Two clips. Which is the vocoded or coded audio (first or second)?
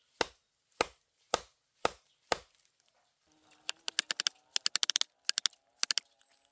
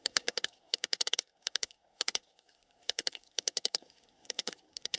second